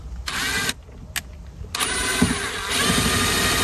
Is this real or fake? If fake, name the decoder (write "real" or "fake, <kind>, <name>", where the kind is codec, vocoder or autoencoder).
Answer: real